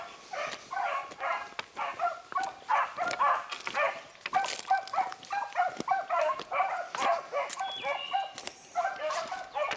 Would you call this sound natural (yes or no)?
yes